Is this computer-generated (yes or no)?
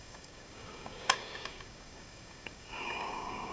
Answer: yes